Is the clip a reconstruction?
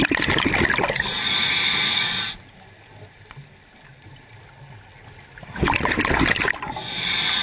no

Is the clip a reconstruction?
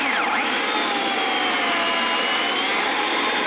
no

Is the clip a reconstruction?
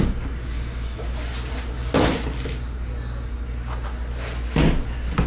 no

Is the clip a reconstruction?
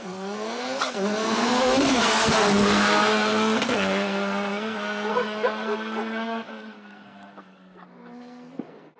yes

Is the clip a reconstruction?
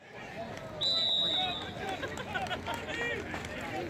no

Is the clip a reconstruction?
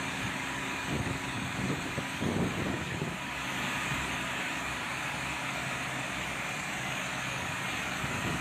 yes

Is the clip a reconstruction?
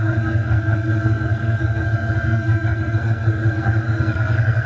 yes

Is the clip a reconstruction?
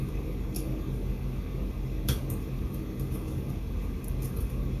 yes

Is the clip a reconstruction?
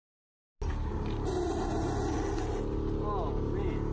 no